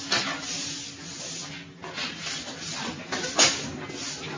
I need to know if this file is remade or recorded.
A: recorded